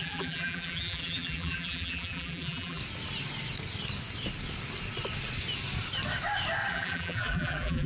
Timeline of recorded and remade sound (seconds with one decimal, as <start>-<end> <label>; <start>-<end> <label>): 0.0-2.8 remade; 2.8-6.7 recorded; 6.7-7.9 remade